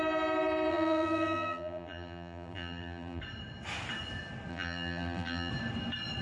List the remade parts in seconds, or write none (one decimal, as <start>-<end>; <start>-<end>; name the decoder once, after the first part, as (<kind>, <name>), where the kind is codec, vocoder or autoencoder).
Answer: 0.7-3.2 (vocoder, BigVGAN v2); 4.5-5.5